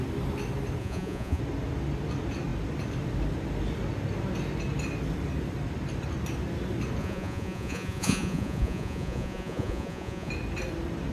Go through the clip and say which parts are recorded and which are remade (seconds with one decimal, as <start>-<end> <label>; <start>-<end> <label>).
0.0-0.8 recorded; 0.8-1.4 remade; 1.4-7.0 recorded; 7.0-10.3 remade; 10.3-11.1 recorded